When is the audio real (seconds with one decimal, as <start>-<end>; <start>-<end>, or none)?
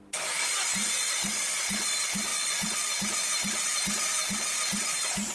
0.0-2.3; 2.9-5.3